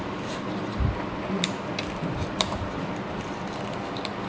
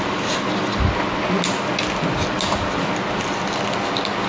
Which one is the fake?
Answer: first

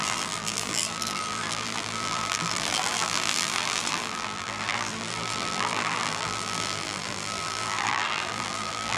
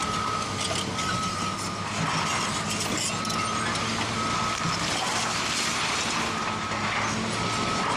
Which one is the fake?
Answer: first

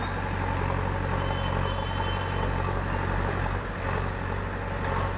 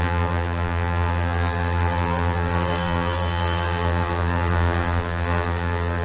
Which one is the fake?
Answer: second